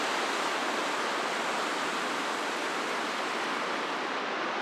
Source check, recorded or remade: recorded